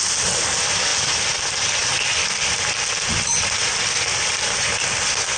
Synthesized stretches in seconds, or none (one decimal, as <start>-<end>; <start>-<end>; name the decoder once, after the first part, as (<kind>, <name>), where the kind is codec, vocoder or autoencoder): none